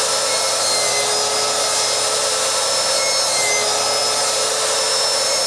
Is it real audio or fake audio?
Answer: real